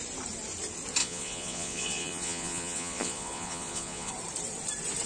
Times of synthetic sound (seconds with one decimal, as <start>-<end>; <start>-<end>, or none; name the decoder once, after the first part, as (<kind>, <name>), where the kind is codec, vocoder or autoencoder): 1.0-4.1 (vocoder, Vocos)